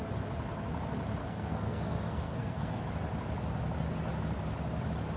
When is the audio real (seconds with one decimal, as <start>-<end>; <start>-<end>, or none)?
0.0-1.2; 2.8-5.2